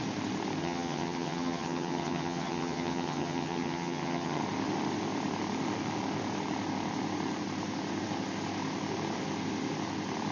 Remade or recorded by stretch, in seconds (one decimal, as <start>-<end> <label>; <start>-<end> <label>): 0.0-0.6 recorded; 0.6-4.4 remade; 4.4-10.3 recorded

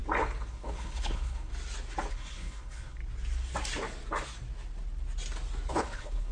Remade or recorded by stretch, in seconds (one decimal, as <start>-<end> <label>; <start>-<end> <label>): 0.0-0.5 recorded; 0.5-1.5 remade; 1.5-2.1 recorded; 2.1-3.0 remade; 3.0-5.7 recorded; 5.7-6.3 remade

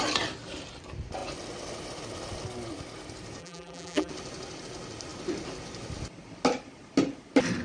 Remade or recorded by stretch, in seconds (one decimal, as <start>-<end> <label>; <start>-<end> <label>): 0.0-3.4 recorded; 3.4-4.1 remade; 4.1-7.6 recorded

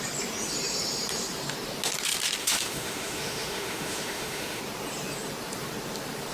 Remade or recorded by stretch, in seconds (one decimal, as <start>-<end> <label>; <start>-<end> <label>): 0.0-2.4 recorded; 2.4-4.6 remade; 4.6-6.3 recorded

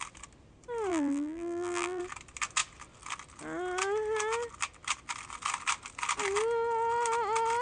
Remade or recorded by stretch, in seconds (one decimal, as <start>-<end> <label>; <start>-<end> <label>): 0.0-0.9 recorded; 0.9-2.0 remade; 2.0-7.6 recorded

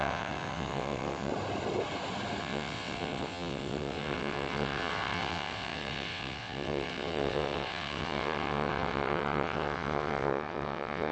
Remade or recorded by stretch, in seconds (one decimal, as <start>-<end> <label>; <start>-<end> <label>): 0.0-1.3 remade; 1.3-2.4 recorded; 2.4-11.1 remade

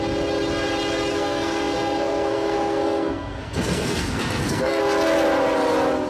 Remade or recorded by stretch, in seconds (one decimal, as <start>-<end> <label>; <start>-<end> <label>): 0.0-1.1 recorded; 1.1-4.8 remade; 4.8-6.1 recorded